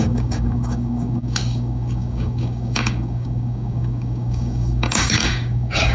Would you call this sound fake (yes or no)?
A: yes